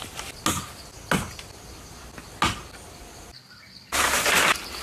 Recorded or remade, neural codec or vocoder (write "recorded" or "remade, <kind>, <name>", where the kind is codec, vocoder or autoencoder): recorded